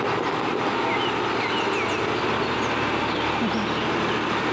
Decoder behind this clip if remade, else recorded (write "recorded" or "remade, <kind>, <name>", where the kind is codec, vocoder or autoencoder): recorded